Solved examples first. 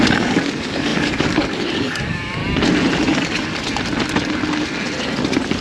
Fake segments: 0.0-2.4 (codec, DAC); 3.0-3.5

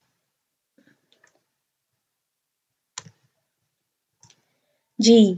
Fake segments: none

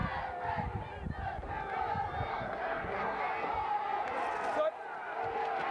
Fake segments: 2.3-3.2 (codec, SNAC)

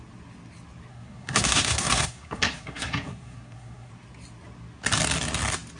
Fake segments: 0.9-3.9 (codec, SNAC)

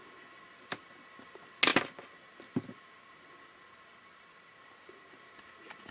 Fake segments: none

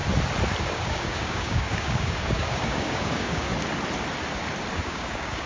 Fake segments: 0.6-3.5 (codec, DAC); 4.8-5.5